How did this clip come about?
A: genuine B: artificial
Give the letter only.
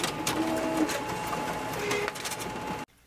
A